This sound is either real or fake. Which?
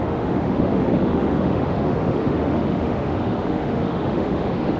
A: fake